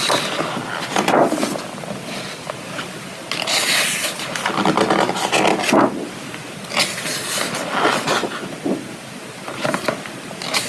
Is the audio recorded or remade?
recorded